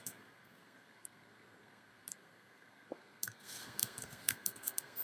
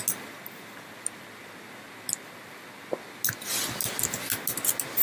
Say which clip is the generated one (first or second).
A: first